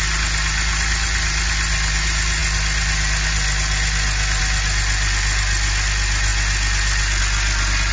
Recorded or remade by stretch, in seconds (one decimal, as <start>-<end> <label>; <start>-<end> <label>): 0.0-7.9 recorded